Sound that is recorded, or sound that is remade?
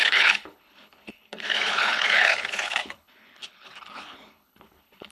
remade